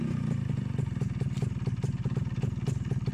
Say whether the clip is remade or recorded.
recorded